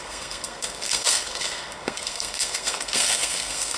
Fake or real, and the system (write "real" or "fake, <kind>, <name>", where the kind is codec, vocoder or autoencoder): fake, codec, SNAC